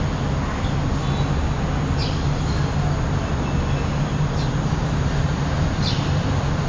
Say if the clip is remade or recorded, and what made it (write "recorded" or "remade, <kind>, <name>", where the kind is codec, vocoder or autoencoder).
recorded